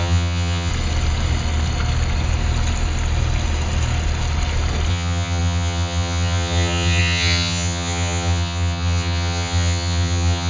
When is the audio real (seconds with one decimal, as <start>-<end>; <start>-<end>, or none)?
0.7-4.9

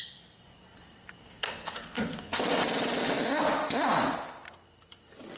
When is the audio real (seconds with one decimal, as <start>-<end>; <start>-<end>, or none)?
0.0-1.2; 2.4-5.4

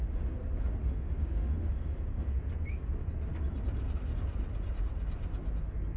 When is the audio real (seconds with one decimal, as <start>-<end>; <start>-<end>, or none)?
0.0-0.8; 1.7-6.0

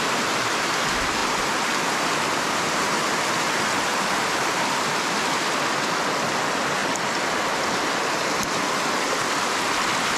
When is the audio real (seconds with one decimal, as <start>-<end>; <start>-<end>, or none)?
0.0-10.2

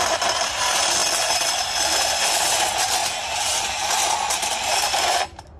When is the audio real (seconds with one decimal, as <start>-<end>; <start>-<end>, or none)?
0.0-3.0; 4.7-5.6

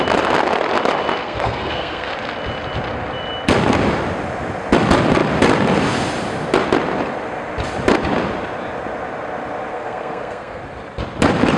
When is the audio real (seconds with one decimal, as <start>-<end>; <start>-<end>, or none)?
0.0-1.2; 2.1-9.7; 10.6-11.6

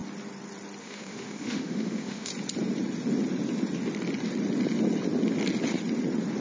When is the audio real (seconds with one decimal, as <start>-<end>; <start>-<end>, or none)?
0.0-0.8; 2.3-6.4